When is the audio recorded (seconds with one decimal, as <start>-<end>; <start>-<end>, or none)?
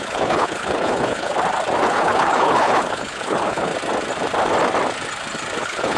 1.3-1.9; 3.7-5.6